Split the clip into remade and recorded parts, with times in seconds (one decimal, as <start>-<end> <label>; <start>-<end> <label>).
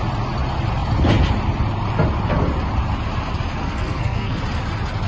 0.0-3.6 recorded; 3.6-4.4 remade; 4.4-5.1 recorded